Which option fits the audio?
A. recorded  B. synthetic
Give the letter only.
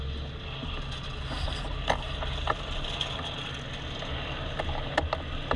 A